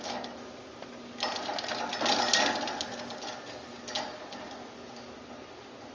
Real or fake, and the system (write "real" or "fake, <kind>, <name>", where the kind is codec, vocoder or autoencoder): real